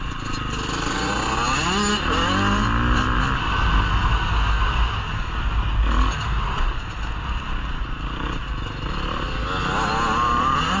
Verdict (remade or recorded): recorded